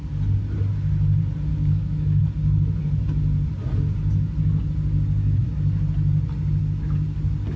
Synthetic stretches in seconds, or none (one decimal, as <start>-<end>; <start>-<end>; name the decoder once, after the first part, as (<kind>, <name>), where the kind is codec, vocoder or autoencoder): 1.5-2.2 (codec, DAC)